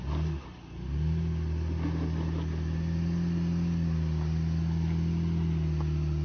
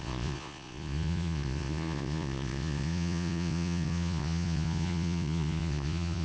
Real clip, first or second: first